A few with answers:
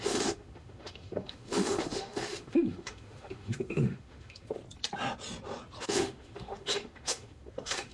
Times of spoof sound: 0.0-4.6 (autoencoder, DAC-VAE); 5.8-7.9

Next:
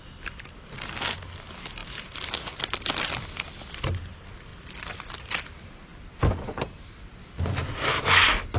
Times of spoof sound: none

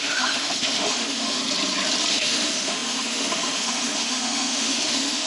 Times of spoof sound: 0.0-1.4 (autoencoder, DAC-VAE); 2.1-5.3

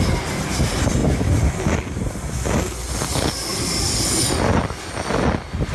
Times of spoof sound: none

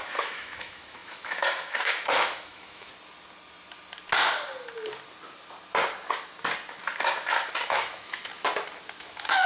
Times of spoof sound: 0.0-2.9 (autoencoder, DAC-VAE); 7.7-8.3; 9.0-9.5

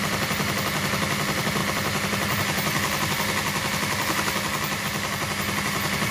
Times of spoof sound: none

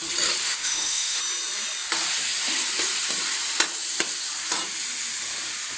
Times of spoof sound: 0.4-1.2 (autoencoder, DAC-VAE)